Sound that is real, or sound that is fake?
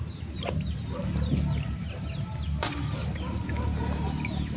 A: real